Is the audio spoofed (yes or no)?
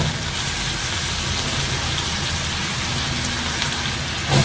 no